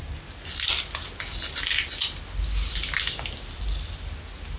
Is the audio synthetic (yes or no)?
no